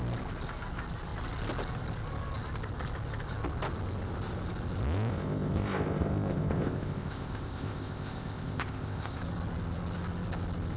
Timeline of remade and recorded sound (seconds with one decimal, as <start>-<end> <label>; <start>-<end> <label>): 0.0-5.1 recorded; 5.1-9.2 remade; 9.2-10.8 recorded